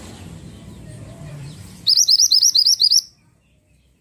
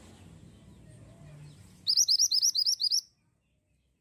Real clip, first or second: second